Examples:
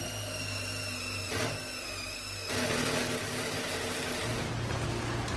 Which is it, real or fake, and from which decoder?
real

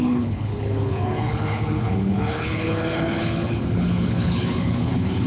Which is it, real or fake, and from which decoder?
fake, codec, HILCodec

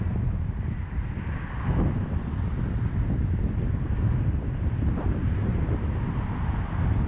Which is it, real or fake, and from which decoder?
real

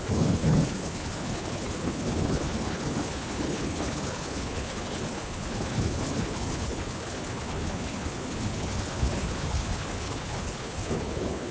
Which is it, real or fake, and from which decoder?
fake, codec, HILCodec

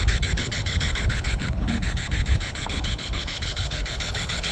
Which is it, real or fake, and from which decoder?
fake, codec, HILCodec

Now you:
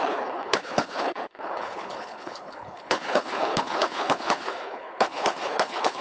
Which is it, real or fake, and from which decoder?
fake, codec, HILCodec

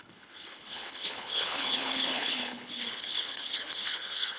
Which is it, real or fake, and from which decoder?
fake, codec, HILCodec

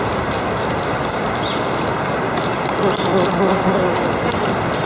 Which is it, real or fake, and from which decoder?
real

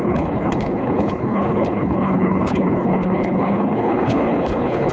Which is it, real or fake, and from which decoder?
fake, codec, HILCodec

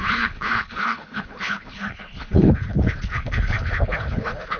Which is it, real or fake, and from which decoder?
fake, codec, HILCodec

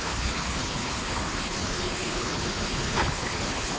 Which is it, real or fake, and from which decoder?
fake, codec, HILCodec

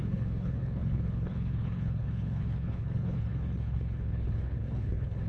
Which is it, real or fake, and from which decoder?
fake, codec, HILCodec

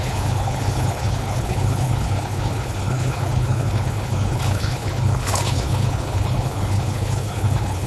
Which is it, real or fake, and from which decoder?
fake, codec, HILCodec